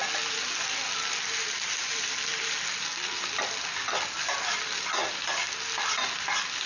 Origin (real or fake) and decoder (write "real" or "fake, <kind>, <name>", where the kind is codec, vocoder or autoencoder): real